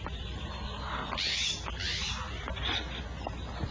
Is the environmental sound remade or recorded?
recorded